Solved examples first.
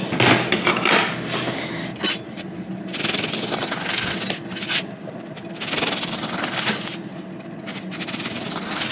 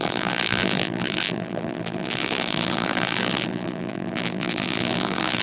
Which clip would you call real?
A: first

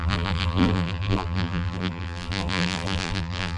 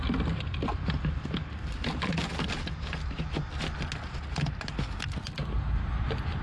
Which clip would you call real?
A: second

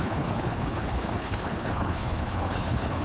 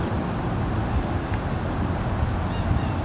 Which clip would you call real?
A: second